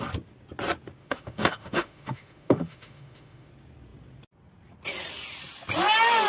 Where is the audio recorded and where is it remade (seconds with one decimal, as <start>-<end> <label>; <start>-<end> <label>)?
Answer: 0.0-1.0 recorded; 1.0-3.5 remade; 3.5-6.3 recorded